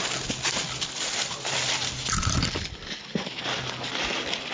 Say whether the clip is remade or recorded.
recorded